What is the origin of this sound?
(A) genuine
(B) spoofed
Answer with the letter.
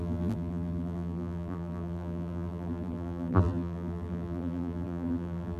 B